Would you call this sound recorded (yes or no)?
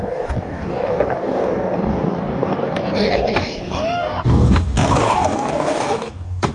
no